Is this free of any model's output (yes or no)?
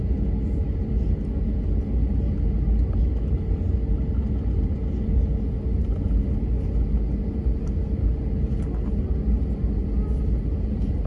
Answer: yes